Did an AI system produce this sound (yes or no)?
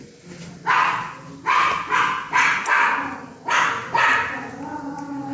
no